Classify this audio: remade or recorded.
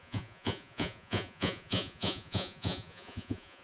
remade